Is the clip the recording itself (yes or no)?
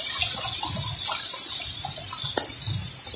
yes